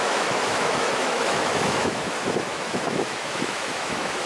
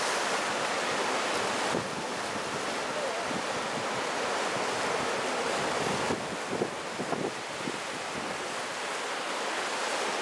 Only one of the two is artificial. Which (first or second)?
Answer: first